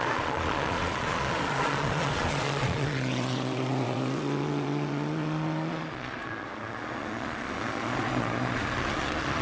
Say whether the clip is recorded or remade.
remade